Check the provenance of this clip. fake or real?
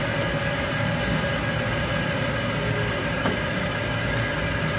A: real